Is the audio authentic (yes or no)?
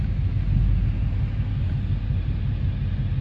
yes